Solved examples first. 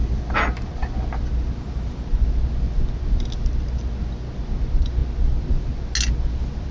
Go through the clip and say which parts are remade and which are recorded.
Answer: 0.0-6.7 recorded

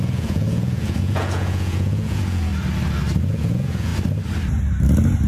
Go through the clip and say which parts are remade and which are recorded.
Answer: 0.0-2.5 remade; 2.5-3.3 recorded; 3.3-3.9 remade; 3.9-5.3 recorded

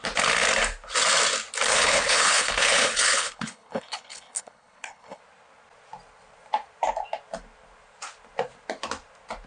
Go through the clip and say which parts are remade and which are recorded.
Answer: 0.0-1.7 recorded; 1.7-5.2 remade; 5.2-9.5 recorded

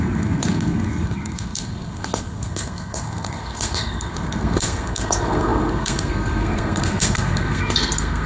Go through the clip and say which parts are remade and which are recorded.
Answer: 0.0-8.3 remade

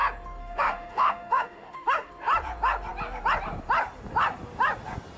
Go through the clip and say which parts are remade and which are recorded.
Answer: 0.0-0.4 recorded; 0.4-2.1 remade; 2.1-5.2 recorded

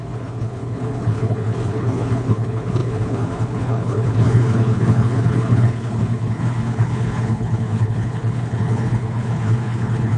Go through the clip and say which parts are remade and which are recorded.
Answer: 0.0-10.2 remade